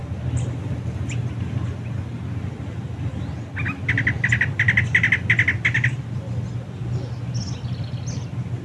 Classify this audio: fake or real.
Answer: real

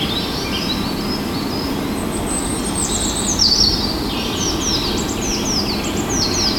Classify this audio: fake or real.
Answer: real